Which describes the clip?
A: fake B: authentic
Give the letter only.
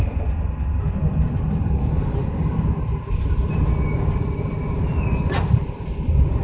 A